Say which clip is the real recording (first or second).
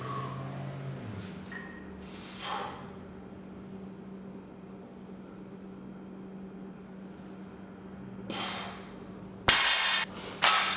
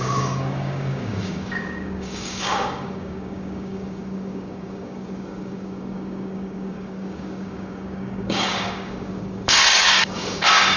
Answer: first